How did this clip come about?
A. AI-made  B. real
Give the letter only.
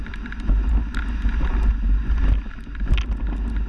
B